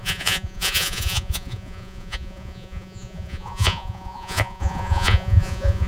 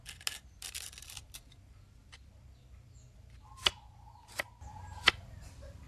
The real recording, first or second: second